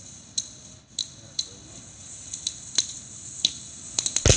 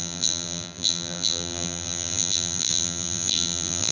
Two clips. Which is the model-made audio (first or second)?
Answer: second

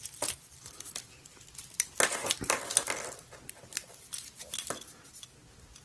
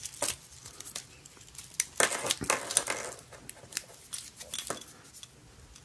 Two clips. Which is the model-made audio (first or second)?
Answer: first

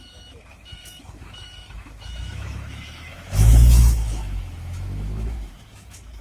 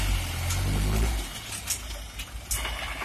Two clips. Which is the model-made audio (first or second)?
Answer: first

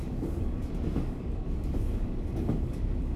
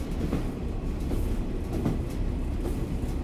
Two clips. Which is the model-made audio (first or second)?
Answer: first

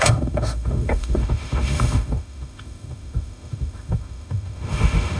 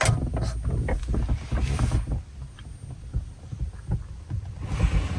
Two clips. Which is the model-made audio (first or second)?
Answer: first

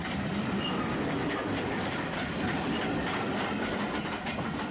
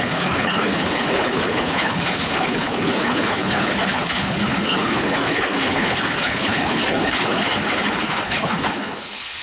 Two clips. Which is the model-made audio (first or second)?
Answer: second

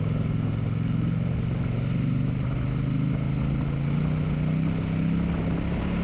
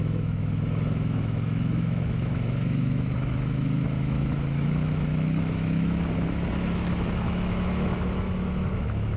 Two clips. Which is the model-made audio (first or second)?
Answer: second